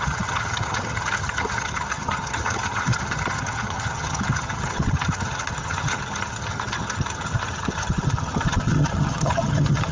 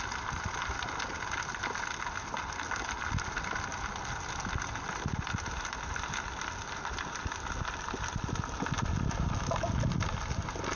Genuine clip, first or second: second